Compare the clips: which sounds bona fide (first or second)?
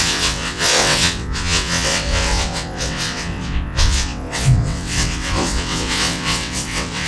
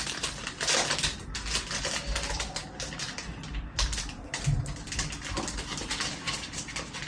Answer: second